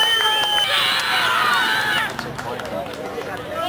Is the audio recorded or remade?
recorded